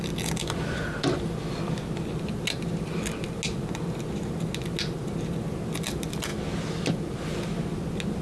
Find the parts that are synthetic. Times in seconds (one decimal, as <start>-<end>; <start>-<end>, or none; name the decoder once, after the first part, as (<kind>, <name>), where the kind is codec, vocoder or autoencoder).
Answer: none